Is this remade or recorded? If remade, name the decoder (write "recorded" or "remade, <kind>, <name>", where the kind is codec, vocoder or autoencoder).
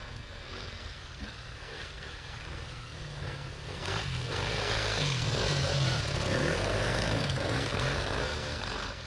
remade, codec, SNAC